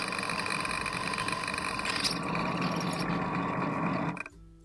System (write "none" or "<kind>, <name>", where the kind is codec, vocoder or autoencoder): none